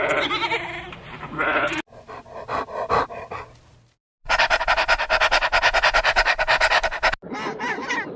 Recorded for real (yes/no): yes